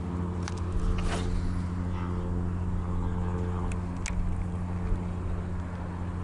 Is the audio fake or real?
real